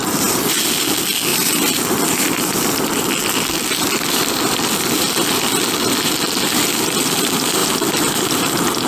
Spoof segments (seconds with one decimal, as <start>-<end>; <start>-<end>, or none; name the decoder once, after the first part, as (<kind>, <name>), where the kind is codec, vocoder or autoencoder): 1.3-4.3 (vocoder, BigVGAN v2); 7.6-8.5